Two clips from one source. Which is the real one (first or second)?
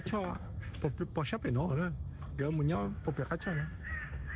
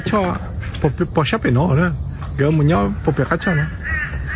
second